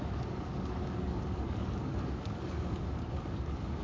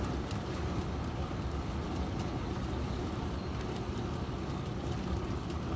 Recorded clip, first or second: second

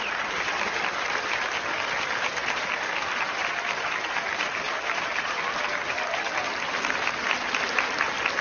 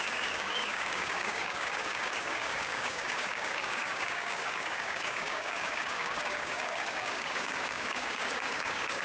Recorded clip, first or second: first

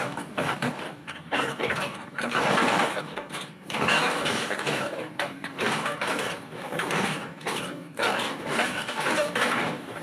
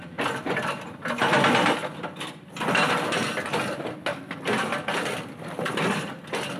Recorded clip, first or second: second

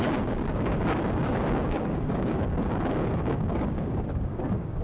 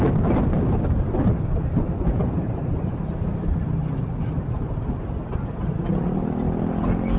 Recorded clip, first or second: second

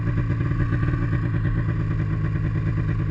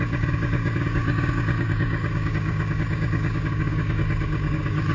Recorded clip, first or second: first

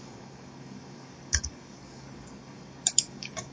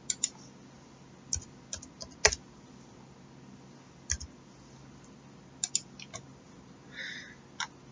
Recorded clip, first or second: second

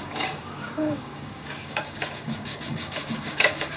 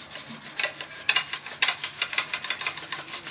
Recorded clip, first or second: second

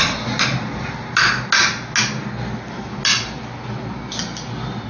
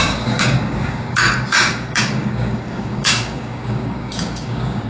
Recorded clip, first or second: first